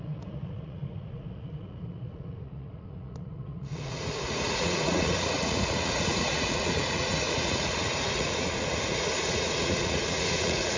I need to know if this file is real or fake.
fake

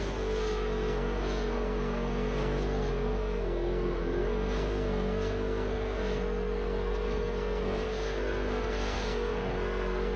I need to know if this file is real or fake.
fake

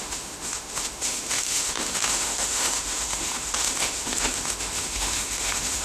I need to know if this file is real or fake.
fake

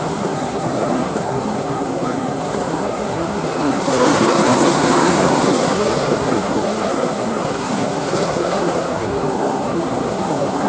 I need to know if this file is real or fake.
fake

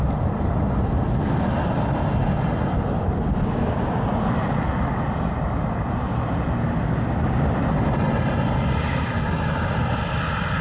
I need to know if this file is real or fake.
fake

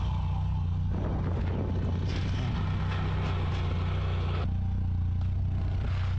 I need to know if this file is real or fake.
real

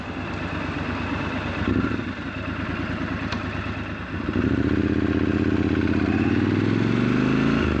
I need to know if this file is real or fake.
real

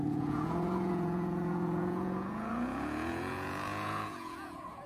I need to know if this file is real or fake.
fake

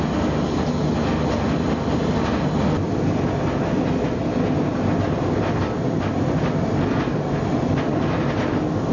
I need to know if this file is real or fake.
real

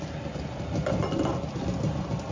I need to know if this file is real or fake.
real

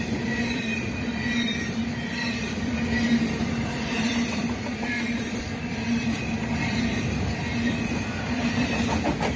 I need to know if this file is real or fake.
fake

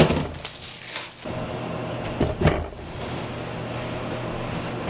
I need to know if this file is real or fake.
real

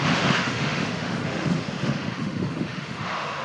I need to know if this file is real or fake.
fake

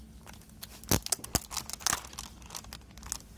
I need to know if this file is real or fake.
real